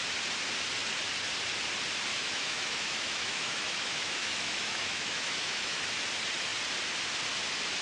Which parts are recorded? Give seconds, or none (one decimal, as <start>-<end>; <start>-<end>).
0.0-2.1; 5.8-7.8